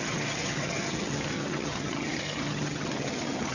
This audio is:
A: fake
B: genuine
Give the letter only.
A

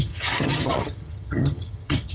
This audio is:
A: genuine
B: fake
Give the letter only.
B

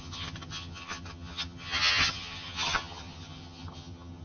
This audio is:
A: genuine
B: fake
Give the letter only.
B